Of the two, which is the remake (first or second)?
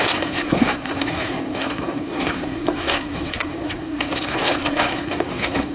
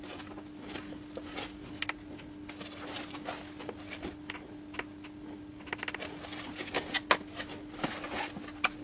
first